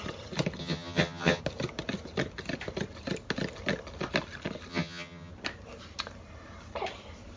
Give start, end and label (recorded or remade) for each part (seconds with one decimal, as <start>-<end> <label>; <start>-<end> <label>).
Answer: 0.0-0.6 recorded; 0.6-1.4 remade; 1.4-4.7 recorded; 4.7-5.3 remade; 5.3-7.4 recorded